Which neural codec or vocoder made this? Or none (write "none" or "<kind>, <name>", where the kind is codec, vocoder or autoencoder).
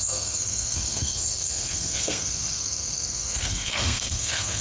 codec, SNAC